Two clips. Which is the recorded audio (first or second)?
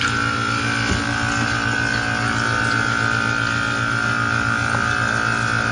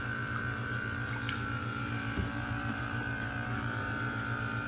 first